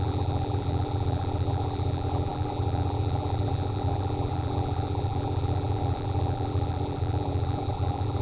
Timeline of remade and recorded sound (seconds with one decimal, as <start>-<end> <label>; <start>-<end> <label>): 0.0-8.2 remade